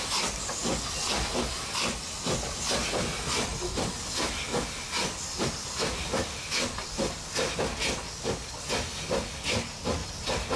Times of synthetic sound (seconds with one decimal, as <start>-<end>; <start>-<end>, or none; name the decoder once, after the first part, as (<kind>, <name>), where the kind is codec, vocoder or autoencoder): none